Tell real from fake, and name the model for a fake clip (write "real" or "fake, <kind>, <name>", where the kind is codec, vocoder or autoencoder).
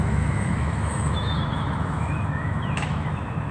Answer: fake, autoencoder, DAC-VAE